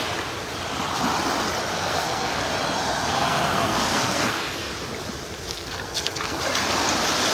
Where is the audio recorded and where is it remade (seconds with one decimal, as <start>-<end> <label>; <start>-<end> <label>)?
0.0-1.7 recorded; 1.7-2.5 remade; 2.5-3.1 recorded; 3.1-4.7 remade; 4.7-5.5 recorded; 5.5-6.4 remade; 6.4-7.3 recorded